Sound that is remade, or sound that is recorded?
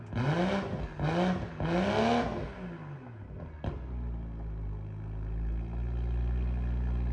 recorded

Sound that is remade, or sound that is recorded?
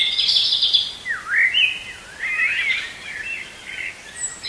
recorded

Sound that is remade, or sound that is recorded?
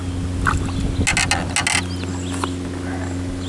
recorded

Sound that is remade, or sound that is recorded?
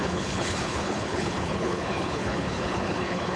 remade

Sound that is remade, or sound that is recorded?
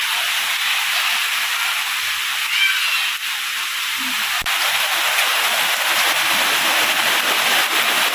recorded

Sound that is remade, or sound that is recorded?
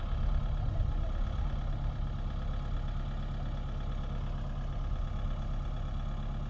recorded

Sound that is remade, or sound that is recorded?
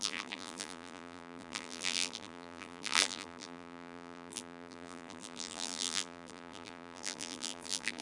remade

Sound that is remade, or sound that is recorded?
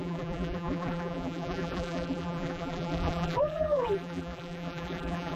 remade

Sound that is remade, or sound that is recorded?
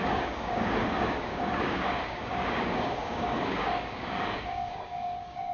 remade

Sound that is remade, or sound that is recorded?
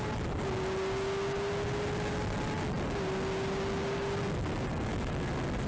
recorded